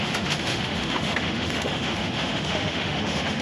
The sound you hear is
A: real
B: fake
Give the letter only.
B